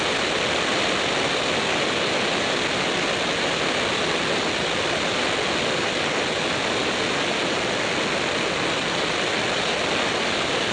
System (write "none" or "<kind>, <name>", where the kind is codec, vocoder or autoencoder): none